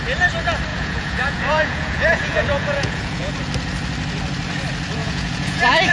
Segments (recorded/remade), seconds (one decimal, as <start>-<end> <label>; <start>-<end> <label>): 0.0-0.7 recorded; 0.7-3.3 remade; 3.3-5.0 recorded; 5.0-5.9 remade